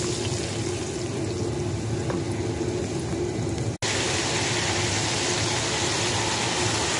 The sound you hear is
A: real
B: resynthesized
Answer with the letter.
A